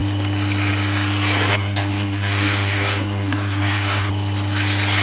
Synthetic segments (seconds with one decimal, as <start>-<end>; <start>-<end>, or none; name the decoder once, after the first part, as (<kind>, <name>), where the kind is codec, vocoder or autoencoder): 1.5-4.1 (codec, SNAC)